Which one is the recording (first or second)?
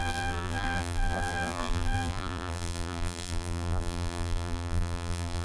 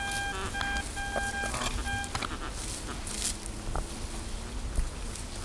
second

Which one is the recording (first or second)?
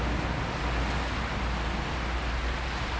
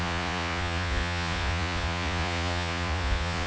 first